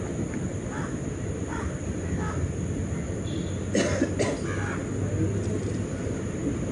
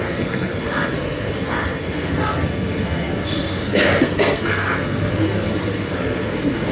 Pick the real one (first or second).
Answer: first